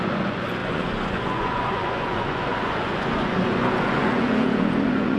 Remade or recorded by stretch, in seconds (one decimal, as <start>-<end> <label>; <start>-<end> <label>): 0.0-5.2 remade